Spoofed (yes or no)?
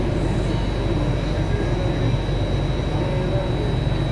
no